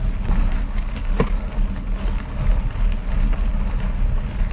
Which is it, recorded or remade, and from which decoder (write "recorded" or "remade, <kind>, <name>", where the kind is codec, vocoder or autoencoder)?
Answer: recorded